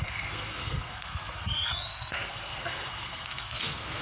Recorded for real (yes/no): no